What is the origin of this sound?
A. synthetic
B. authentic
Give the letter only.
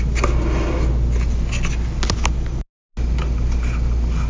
B